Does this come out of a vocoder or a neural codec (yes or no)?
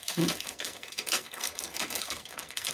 yes